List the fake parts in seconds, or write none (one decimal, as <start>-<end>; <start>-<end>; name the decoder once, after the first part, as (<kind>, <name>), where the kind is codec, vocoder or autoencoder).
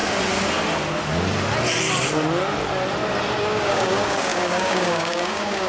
3.4-5.7 (codec, DAC)